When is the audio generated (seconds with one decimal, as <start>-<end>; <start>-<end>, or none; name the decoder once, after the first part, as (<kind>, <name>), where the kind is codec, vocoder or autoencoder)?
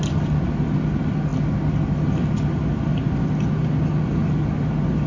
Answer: none